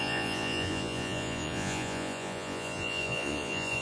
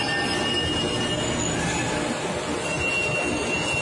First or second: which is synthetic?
first